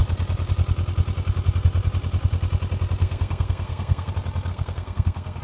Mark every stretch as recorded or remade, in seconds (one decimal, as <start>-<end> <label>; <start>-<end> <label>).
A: 0.0-3.0 recorded; 3.0-4.1 remade; 4.1-4.5 recorded; 4.5-5.4 remade